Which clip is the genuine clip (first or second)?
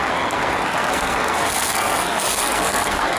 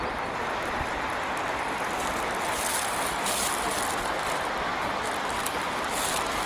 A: second